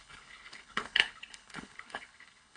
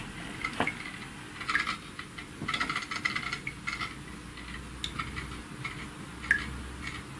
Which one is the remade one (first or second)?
first